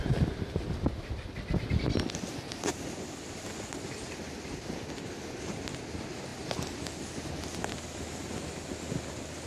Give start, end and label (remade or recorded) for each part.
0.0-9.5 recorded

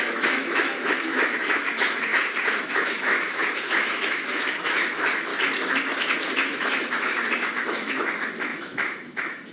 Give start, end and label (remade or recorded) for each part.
0.0-2.1 remade; 2.1-2.6 recorded; 2.6-5.3 remade; 5.3-6.2 recorded; 6.2-9.5 remade

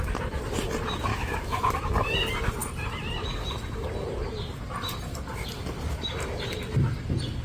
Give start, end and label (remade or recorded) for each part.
0.0-1.1 recorded; 1.1-1.7 remade; 1.7-7.4 recorded

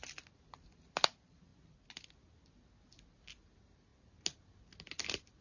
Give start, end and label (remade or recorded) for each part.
0.0-5.4 recorded

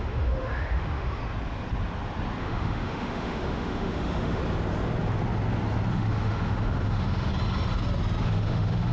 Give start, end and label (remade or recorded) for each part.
0.0-1.2 remade; 1.2-2.4 recorded; 2.4-4.4 remade; 4.4-5.9 recorded; 5.9-7.3 remade; 7.3-8.2 recorded; 8.2-8.9 remade

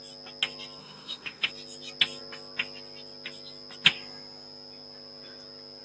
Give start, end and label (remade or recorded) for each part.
0.0-0.8 recorded; 0.8-1.5 remade; 1.5-5.8 recorded